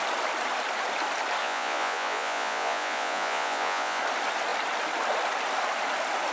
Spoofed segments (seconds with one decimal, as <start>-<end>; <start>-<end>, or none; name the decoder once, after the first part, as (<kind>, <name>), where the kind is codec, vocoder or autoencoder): 1.4-4.0 (vocoder, Vocos)